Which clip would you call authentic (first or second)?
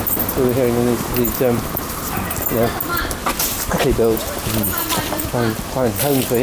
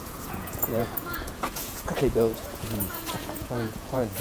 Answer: first